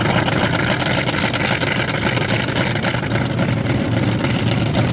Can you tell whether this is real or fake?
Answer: real